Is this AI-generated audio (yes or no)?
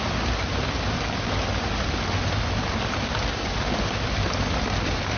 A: no